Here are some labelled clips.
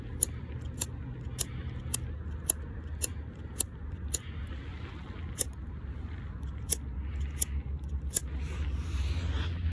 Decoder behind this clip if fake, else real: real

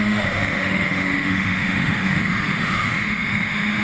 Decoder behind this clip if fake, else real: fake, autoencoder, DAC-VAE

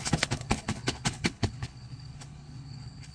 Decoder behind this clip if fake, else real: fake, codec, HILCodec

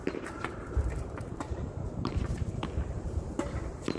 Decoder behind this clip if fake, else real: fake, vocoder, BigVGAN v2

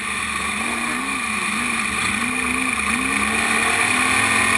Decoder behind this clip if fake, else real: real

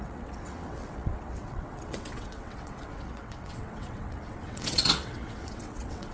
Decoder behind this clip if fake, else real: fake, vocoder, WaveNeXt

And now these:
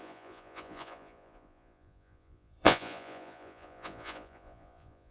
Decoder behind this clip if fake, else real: fake, vocoder, Vocos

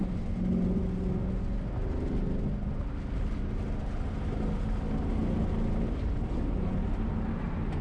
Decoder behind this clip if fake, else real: real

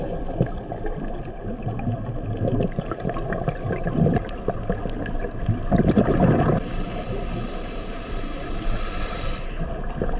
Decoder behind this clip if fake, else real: real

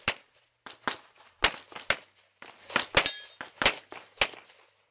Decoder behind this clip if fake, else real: real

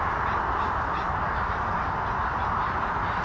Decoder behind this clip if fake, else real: real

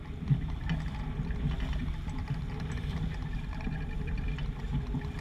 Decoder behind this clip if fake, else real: real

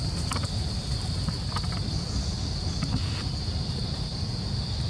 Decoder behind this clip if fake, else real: real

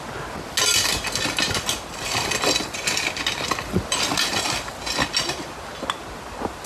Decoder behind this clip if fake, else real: real